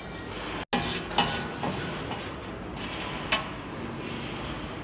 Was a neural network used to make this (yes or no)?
no